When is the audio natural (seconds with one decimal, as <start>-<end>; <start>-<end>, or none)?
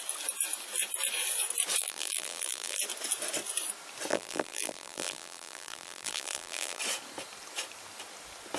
0.0-1.8; 2.8-4.1; 6.8-8.6